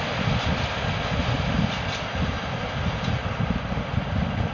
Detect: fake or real real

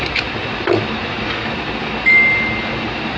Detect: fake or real real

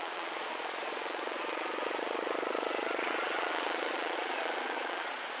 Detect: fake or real fake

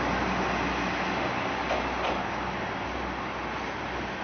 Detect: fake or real real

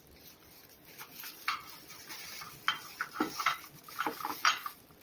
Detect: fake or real real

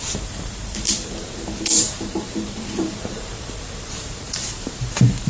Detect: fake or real fake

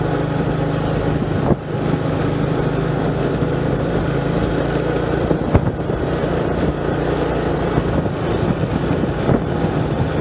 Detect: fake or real real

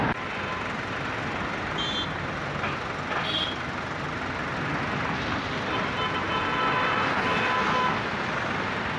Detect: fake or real real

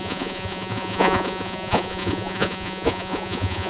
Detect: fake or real fake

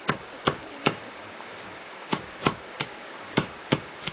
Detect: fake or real fake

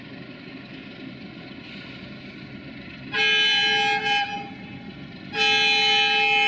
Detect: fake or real real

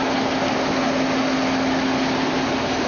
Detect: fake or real real